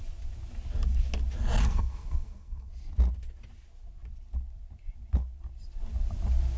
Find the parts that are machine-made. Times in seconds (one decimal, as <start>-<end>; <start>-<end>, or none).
1.6-2.7